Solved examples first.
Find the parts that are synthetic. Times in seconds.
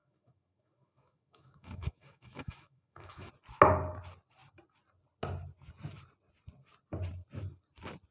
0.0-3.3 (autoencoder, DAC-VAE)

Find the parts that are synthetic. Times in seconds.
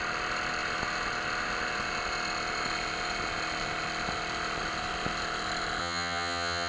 5.8-6.7 (vocoder, HiFi-GAN)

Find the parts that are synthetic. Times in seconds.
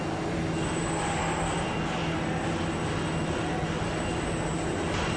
none